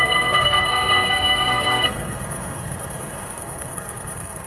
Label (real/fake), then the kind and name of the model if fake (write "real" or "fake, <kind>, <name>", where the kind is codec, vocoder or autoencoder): fake, codec, SNAC